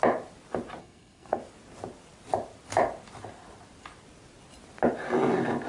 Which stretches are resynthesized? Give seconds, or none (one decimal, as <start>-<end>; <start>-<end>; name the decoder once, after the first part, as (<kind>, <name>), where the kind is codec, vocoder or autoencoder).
0.8-1.4 (codec, SNAC)